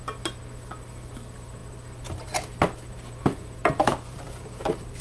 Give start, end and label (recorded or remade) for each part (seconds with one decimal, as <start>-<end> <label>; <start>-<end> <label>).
0.0-5.0 recorded